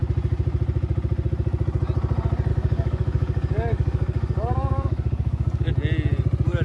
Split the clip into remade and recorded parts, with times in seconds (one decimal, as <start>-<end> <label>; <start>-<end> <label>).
0.0-2.5 recorded; 2.5-5.7 remade; 5.7-6.6 recorded